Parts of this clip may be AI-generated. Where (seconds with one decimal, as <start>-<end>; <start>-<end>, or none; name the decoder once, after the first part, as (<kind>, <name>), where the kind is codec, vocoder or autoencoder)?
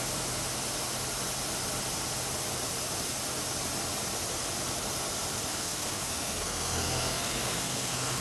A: 5.5-8.2 (codec, SNAC)